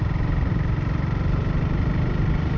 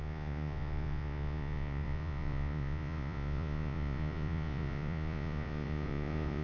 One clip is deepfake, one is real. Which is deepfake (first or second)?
second